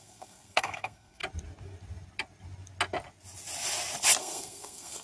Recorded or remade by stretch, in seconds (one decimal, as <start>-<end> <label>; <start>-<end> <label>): 0.0-1.2 remade; 1.2-4.2 recorded; 4.2-5.0 remade